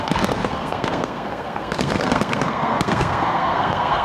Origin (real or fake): fake